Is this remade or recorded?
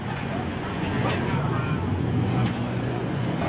remade